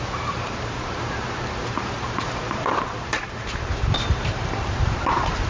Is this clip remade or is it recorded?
remade